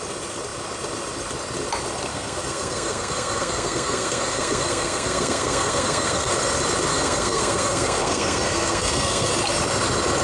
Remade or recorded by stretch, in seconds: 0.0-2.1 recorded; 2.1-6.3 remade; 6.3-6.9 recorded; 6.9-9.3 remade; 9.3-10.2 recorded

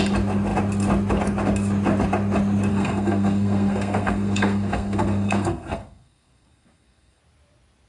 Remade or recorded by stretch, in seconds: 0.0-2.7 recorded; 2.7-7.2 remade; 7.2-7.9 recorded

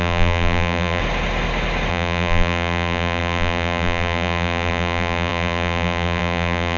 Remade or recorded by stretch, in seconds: 0.0-1.0 remade; 1.0-1.9 recorded; 1.9-6.8 remade